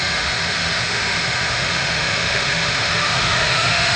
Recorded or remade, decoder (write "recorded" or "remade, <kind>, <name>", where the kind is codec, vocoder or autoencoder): remade, autoencoder, DAC-VAE